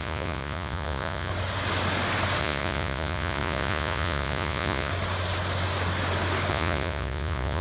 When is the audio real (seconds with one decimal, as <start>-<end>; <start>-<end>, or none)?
1.3-2.4; 4.9-6.5